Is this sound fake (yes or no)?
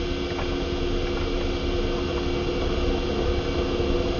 no